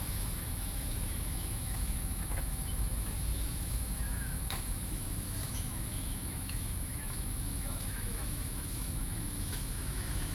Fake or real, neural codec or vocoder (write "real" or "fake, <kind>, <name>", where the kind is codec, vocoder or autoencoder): fake, autoencoder, DAC-VAE